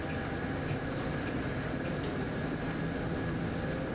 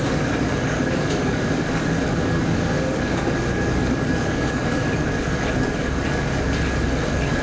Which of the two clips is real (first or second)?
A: first